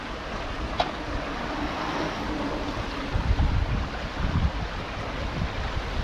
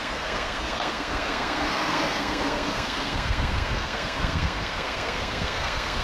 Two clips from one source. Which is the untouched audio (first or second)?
first